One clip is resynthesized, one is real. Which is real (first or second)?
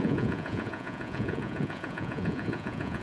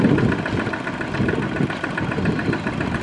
second